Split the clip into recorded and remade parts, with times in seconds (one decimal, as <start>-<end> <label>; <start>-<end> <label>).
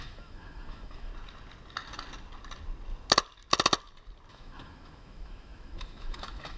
0.0-1.1 remade; 1.1-4.3 recorded; 4.3-6.6 remade